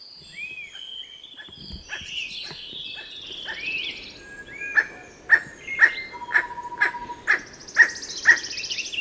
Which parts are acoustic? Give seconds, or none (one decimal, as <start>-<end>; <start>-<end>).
0.0-9.0